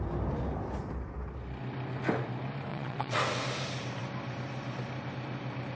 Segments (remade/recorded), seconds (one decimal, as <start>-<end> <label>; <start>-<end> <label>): 0.0-2.7 recorded; 2.7-3.2 remade; 3.2-5.7 recorded